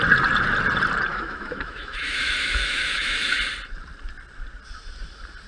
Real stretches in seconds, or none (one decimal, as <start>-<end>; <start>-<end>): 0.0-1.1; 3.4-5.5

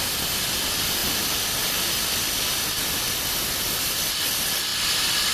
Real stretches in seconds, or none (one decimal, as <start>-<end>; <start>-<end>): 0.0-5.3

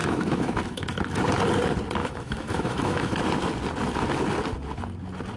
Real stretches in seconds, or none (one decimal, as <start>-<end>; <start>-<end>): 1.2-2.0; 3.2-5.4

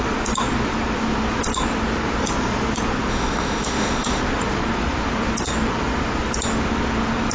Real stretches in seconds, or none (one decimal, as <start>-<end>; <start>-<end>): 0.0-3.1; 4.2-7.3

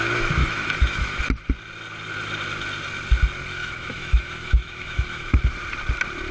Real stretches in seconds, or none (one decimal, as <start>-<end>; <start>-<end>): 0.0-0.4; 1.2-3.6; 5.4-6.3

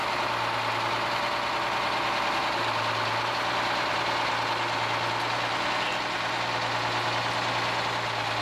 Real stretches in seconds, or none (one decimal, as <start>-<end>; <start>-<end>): 0.0-8.4